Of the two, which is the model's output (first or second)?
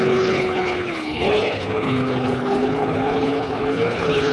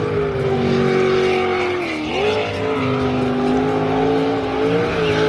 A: first